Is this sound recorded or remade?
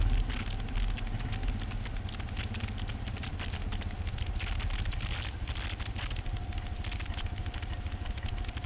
recorded